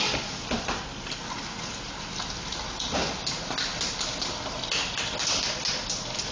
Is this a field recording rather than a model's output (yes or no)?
yes